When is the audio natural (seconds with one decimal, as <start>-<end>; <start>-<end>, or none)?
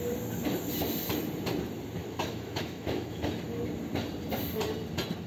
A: 0.0-2.0; 3.2-5.3